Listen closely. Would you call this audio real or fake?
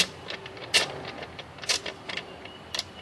fake